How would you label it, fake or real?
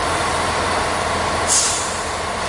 real